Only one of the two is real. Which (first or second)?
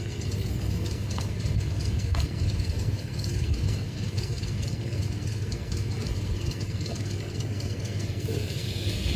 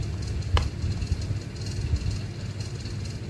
second